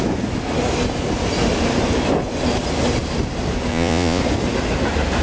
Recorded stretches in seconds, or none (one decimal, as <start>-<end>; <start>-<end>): 0.0-3.7; 4.2-5.2